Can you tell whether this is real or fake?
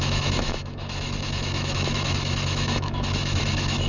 fake